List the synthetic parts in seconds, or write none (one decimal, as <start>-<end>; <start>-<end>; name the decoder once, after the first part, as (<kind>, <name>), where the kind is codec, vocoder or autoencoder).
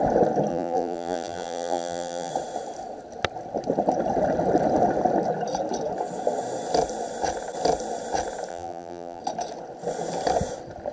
0.5-2.3 (vocoder, BigVGAN v2); 8.5-9.2